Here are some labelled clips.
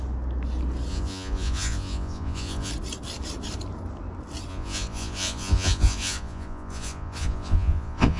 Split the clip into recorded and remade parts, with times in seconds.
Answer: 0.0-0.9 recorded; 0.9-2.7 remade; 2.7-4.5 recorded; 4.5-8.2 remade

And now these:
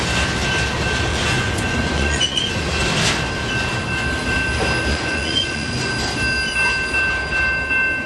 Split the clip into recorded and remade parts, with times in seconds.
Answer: 0.0-1.1 recorded; 1.1-2.5 remade; 2.5-4.9 recorded; 4.9-5.9 remade; 5.9-8.1 recorded

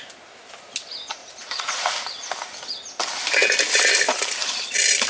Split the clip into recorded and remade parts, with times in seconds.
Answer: 0.0-1.2 recorded; 1.2-1.9 remade; 1.9-5.1 recorded

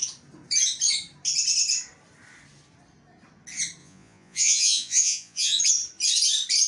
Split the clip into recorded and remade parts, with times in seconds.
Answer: 0.0-3.8 recorded; 3.8-5.6 remade; 5.6-6.7 recorded

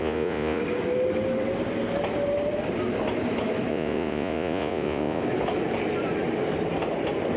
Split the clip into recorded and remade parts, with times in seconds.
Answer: 0.0-0.6 remade; 0.6-3.7 recorded; 3.7-5.2 remade; 5.2-7.4 recorded